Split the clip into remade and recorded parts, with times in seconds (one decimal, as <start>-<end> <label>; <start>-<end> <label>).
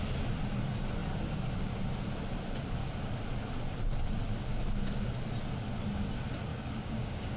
0.0-6.5 recorded; 6.5-7.4 remade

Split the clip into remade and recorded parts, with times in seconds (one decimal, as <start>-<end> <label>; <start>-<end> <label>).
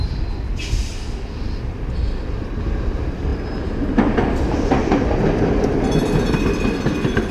0.0-7.3 recorded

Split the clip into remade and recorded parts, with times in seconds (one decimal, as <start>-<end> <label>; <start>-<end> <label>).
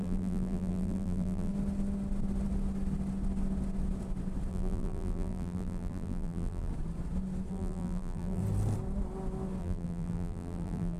0.0-1.5 remade; 1.5-4.5 recorded; 4.5-6.7 remade; 6.7-7.5 recorded; 7.5-8.4 remade; 8.4-9.6 recorded; 9.6-11.0 remade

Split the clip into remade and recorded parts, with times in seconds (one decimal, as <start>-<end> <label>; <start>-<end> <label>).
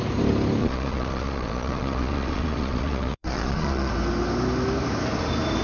0.0-0.6 recorded; 0.6-3.9 remade; 3.9-5.6 recorded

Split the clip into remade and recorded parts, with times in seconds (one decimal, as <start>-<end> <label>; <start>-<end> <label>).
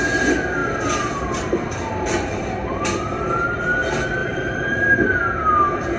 0.0-4.2 recorded; 4.2-5.2 remade; 5.2-6.0 recorded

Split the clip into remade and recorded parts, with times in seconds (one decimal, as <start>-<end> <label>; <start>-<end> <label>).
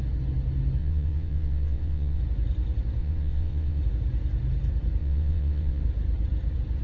0.0-0.8 recorded; 0.8-2.2 remade; 2.2-3.0 recorded; 3.0-3.8 remade; 3.8-5.0 recorded; 5.0-5.8 remade; 5.8-6.8 recorded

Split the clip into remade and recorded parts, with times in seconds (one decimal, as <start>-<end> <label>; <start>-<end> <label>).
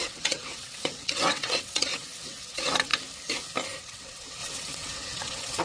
0.0-2.9 remade; 2.9-3.8 recorded; 3.8-5.6 remade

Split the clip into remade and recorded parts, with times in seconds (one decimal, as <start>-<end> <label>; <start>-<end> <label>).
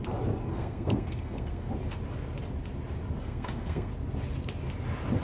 0.0-0.5 recorded; 0.5-1.7 remade; 1.7-3.2 recorded; 3.2-3.9 remade; 3.9-5.2 recorded